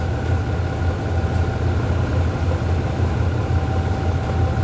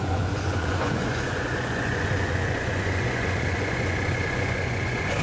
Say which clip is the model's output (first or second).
second